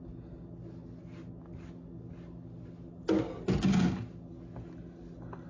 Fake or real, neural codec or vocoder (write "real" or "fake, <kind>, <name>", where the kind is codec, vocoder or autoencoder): real